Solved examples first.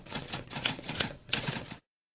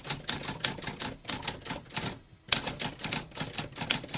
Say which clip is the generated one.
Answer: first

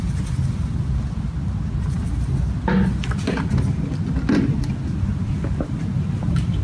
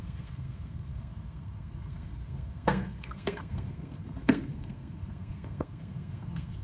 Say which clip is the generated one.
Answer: second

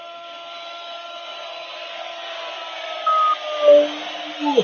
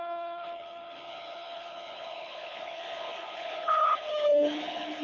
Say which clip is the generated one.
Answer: second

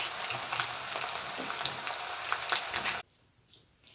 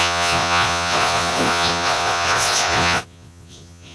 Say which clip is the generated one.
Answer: second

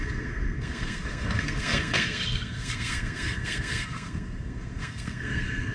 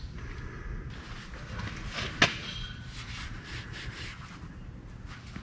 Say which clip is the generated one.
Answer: first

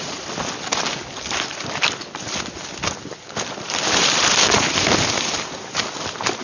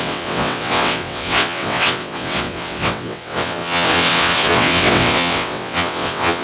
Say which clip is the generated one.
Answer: second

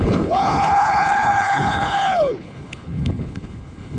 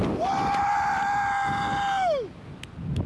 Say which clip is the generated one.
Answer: first